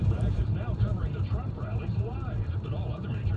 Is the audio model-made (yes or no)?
yes